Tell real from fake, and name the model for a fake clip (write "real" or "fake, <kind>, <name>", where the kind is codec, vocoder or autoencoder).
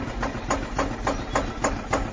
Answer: real